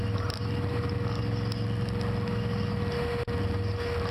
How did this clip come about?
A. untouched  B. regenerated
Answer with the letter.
A